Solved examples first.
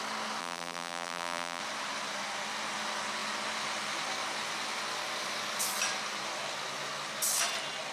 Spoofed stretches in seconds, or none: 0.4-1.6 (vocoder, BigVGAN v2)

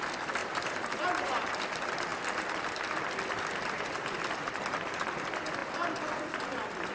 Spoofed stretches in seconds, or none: 0.4-1.6 (vocoder, BigVGAN v2)

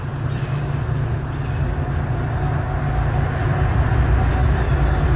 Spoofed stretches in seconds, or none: 3.4-3.9 (vocoder, BigVGAN v2); 4.4-5.2

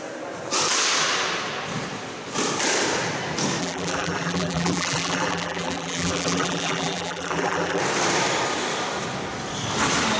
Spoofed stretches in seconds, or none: 3.6-7.8 (vocoder, BigVGAN v2)

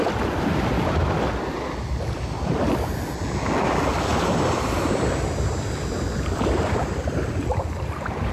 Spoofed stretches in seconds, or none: 4.1-7.7 (vocoder, BigVGAN v2)

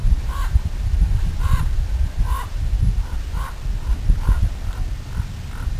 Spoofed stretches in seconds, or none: 0.0-3.5 (vocoder, BigVGAN v2); 3.9-4.6

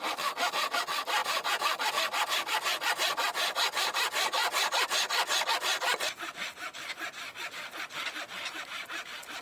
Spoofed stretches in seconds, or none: 1.2-1.9 (vocoder, BigVGAN v2)